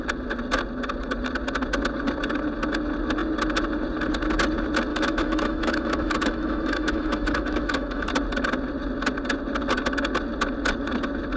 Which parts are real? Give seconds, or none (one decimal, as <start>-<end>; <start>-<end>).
0.0-4.9; 8.1-11.4